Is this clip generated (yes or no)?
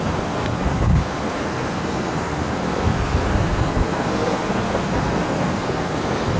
yes